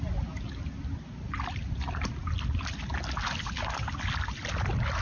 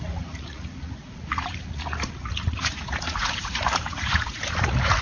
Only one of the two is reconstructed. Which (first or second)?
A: second